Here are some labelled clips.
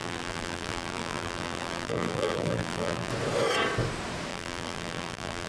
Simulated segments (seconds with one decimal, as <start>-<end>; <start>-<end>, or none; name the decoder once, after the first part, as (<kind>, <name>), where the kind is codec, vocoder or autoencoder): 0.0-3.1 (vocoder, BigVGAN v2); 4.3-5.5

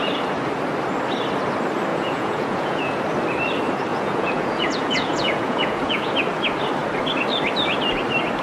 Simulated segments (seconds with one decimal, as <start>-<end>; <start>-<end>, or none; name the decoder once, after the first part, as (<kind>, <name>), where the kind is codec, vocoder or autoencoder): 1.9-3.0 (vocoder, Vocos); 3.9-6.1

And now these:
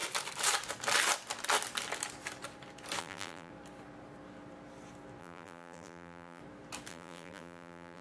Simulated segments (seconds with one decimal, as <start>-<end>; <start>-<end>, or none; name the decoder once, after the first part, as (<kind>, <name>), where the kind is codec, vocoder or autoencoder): 3.0-3.5 (vocoder, BigVGAN v2); 5.2-6.4; 6.9-8.0

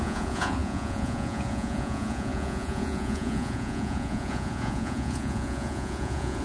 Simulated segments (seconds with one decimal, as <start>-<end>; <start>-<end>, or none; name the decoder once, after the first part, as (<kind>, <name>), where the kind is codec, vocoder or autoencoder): 0.0-6.4 (vocoder, Vocos)

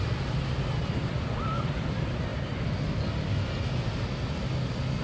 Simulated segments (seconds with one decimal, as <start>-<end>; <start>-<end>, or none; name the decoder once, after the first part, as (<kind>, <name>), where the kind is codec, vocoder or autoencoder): none

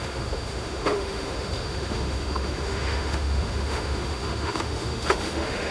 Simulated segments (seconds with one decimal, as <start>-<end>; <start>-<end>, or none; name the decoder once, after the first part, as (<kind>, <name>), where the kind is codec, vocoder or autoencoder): 0.0-5.7 (autoencoder, DAC-VAE)

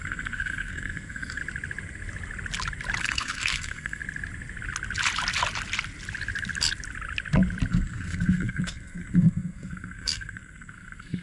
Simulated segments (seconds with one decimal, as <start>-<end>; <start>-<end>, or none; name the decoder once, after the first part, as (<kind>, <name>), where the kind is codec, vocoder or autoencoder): 0.0-1.4 (codec, SNAC); 3.0-4.0; 7.7-11.2

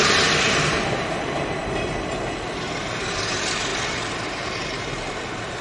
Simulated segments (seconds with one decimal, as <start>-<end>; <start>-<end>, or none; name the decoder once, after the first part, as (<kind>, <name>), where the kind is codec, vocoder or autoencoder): 0.0-5.6 (vocoder, BigVGAN v2)